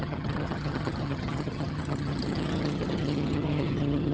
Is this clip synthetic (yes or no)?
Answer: yes